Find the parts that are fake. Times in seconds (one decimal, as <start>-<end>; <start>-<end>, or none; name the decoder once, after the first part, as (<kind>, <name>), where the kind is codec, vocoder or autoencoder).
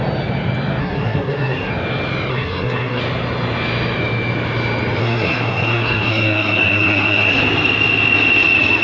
0.8-1.7 (codec, SNAC); 2.3-3.0; 5.0-7.4